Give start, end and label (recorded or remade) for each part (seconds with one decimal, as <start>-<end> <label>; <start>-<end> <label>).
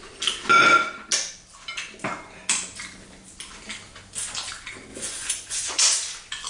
0.0-4.9 recorded; 4.9-5.8 remade; 5.8-6.5 recorded